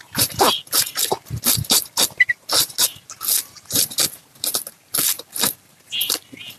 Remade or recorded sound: recorded